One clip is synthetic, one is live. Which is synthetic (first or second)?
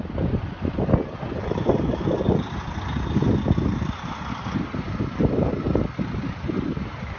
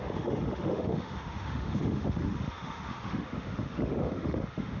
second